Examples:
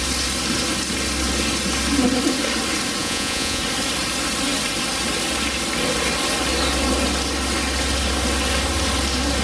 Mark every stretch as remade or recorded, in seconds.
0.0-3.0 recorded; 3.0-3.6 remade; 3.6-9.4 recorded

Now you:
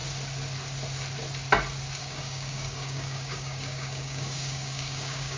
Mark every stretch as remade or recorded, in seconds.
0.0-2.0 recorded; 2.0-5.4 remade

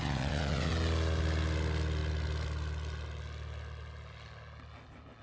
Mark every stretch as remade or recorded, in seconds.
0.0-0.7 remade; 0.7-5.2 recorded

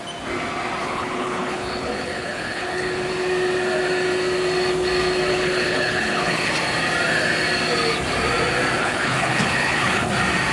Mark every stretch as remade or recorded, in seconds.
0.0-0.8 recorded; 0.8-3.1 remade; 3.1-5.3 recorded; 5.3-6.5 remade; 6.5-8.8 recorded; 8.8-10.1 remade; 10.1-10.5 recorded

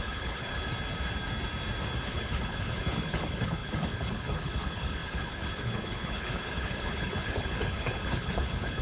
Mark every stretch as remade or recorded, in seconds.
0.0-0.5 remade; 0.5-2.1 recorded; 2.1-8.8 remade

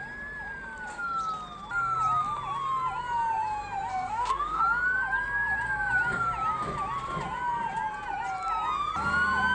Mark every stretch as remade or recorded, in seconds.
0.0-3.9 recorded; 3.9-4.6 remade; 4.6-9.5 recorded

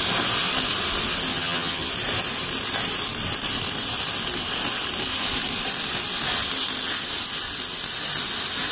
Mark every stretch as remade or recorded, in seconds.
0.0-1.3 recorded; 1.3-1.9 remade; 1.9-8.7 recorded